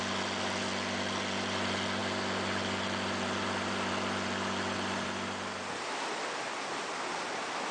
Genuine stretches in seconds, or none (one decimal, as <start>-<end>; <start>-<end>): 0.0-7.7